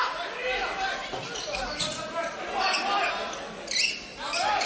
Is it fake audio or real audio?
real